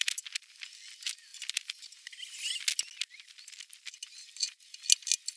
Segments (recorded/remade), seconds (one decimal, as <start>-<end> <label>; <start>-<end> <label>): 0.0-5.4 recorded